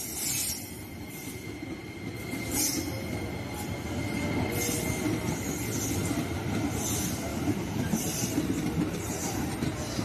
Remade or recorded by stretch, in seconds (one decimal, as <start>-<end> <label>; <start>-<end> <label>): 0.0-7.3 recorded; 7.3-9.5 remade; 9.5-10.0 recorded